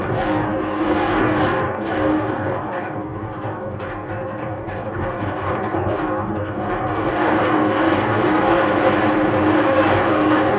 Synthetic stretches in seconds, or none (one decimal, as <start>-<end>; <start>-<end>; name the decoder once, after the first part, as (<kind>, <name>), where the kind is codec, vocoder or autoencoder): 0.0-8.6 (codec, DAC); 9.6-10.6